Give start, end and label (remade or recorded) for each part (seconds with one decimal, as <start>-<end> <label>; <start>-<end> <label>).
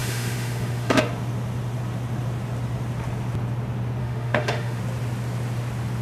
0.0-1.0 remade; 1.0-4.0 recorded; 4.0-4.8 remade; 4.8-6.0 recorded